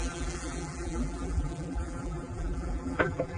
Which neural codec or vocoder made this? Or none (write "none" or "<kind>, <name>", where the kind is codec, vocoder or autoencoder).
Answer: vocoder, BigVGAN v2